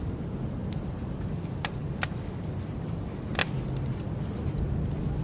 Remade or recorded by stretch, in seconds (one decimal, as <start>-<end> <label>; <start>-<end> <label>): 0.0-0.6 recorded; 0.6-1.4 remade; 1.4-5.2 recorded